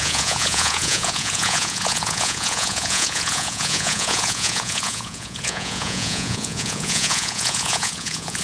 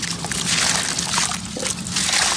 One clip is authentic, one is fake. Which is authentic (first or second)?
second